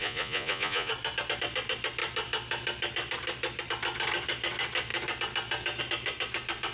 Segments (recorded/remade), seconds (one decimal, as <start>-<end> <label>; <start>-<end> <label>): 0.0-0.9 remade; 0.9-6.7 recorded